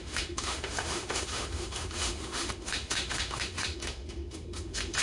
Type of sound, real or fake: fake